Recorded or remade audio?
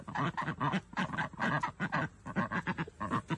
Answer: recorded